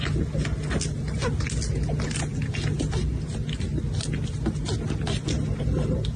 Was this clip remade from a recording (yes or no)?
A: no